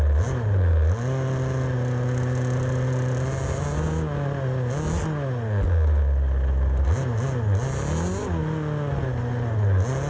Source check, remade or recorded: recorded